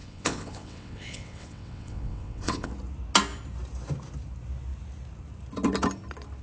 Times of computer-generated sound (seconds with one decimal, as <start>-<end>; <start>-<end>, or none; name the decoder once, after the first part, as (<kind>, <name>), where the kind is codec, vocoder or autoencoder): 0.0-2.7 (vocoder, WaveNeXt)